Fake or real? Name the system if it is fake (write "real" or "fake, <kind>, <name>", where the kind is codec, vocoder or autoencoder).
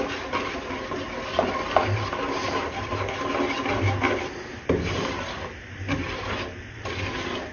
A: real